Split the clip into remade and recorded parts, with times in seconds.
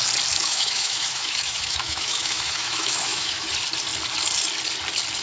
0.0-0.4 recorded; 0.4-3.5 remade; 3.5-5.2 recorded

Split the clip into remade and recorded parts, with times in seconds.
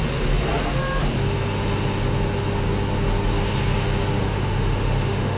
0.0-4.2 recorded; 4.2-5.4 remade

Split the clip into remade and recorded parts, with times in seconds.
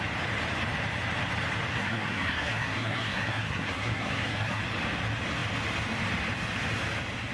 0.0-1.7 recorded; 1.7-4.6 remade; 4.6-7.3 recorded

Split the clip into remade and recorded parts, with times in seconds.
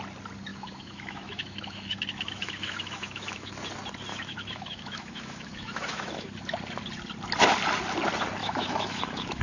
0.0-0.5 recorded; 0.5-3.5 remade; 3.5-4.1 recorded; 4.1-6.3 remade; 6.3-8.4 recorded; 8.4-9.4 remade